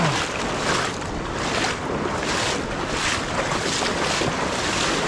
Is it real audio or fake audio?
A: real